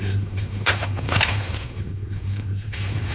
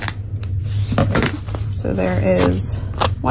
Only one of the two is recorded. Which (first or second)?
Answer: second